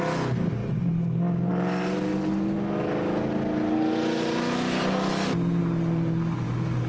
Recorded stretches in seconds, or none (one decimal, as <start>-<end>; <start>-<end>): 0.0-6.9